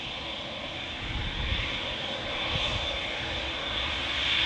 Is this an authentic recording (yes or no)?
yes